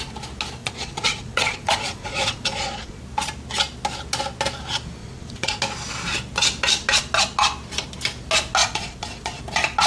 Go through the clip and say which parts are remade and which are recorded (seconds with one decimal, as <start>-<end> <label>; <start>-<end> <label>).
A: 0.0-0.6 recorded; 0.6-3.0 remade; 3.0-5.0 recorded; 5.0-5.6 remade; 5.6-8.6 recorded; 8.6-9.4 remade; 9.4-9.9 recorded